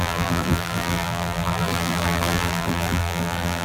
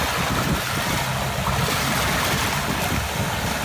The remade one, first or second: first